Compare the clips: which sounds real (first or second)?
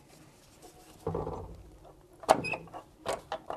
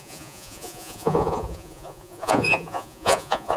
first